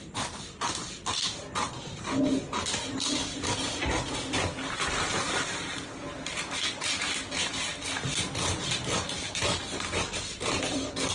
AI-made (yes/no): no